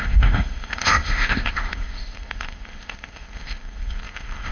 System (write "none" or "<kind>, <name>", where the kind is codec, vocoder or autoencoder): codec, ZipCodec